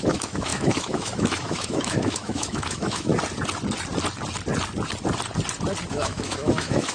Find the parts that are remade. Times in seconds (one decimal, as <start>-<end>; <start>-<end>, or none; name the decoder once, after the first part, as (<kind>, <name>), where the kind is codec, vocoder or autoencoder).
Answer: 0.0-3.1 (autoencoder, DAC-VAE); 5.9-6.9